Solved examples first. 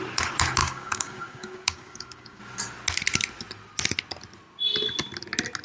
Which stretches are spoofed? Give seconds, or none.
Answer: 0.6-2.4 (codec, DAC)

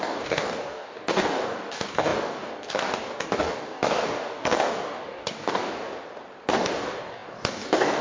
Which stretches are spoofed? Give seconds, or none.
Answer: 0.0-5.8 (codec, DAC); 6.5-8.0